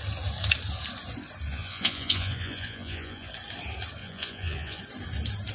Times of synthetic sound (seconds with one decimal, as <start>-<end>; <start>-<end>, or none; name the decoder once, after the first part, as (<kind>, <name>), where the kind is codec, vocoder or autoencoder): 1.5-3.3 (vocoder, Vocos); 4.0-4.8